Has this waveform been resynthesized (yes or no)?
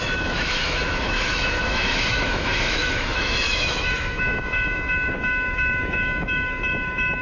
yes